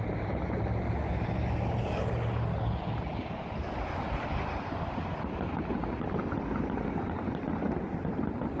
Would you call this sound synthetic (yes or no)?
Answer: no